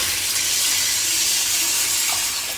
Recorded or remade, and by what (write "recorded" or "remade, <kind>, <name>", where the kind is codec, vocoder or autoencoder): recorded